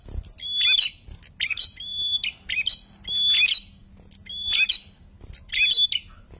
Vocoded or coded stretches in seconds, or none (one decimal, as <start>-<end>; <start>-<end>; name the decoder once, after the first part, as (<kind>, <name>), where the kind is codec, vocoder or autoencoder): none